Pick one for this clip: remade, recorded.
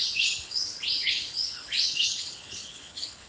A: remade